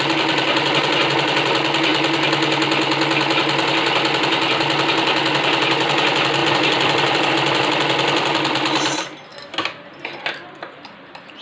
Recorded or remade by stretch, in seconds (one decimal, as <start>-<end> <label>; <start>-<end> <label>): 0.0-11.4 recorded